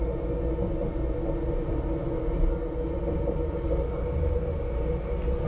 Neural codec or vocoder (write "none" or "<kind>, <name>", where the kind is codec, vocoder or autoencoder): none